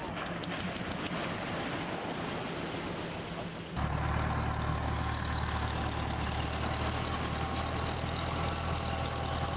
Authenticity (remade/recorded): recorded